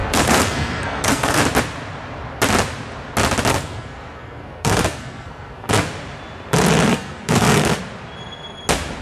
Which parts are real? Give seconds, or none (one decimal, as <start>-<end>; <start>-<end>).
1.4-3.5; 5.7-6.9; 7.8-9.0